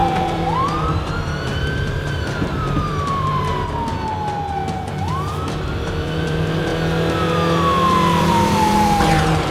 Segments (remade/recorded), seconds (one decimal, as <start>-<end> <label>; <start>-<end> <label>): 0.0-3.5 remade; 3.5-5.7 recorded; 5.7-6.7 remade; 6.7-8.2 recorded; 8.2-9.5 remade